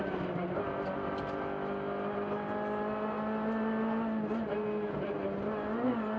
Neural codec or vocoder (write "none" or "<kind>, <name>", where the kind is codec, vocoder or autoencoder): none